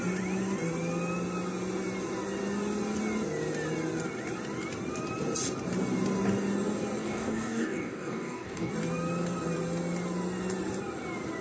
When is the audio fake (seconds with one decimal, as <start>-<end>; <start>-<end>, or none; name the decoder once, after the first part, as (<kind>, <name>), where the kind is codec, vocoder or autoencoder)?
7.0-8.7 (codec, DAC)